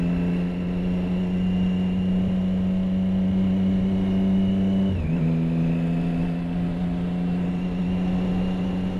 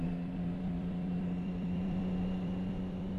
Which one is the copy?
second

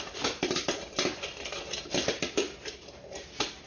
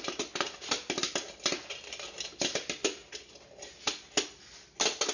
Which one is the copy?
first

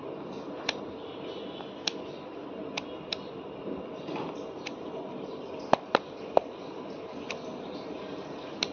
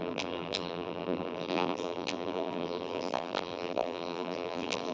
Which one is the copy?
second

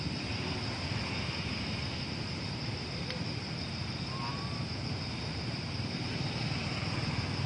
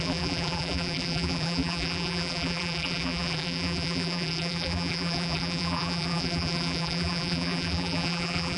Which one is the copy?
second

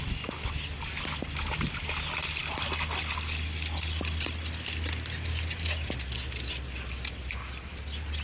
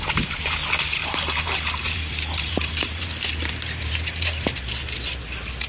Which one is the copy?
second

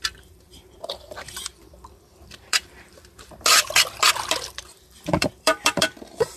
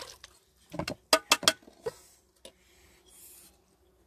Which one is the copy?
first